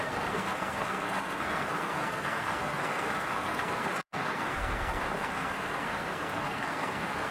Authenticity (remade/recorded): remade